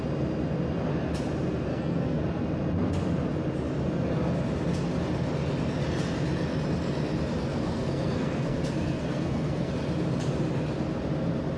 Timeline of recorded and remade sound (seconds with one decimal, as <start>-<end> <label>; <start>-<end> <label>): 0.0-1.7 recorded; 1.7-2.2 remade; 2.2-7.5 recorded; 7.5-9.7 remade; 9.7-11.6 recorded

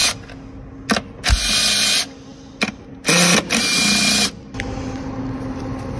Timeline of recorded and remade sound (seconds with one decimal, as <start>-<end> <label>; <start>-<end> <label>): 0.0-6.0 recorded

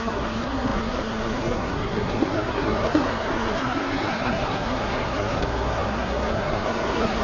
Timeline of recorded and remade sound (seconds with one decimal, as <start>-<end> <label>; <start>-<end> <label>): 0.0-7.2 remade

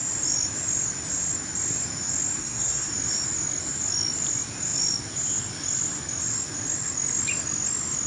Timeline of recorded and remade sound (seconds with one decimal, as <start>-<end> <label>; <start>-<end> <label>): 0.0-2.4 recorded; 2.4-2.9 remade; 2.9-8.1 recorded

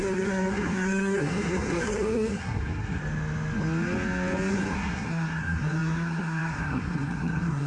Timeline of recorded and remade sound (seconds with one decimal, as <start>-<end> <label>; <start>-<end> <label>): 0.0-3.0 remade; 3.0-4.5 recorded; 4.5-7.7 remade